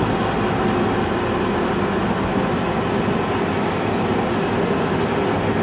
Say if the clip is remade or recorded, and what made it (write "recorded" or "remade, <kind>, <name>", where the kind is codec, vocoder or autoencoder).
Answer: recorded